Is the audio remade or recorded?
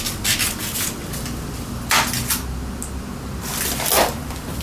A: recorded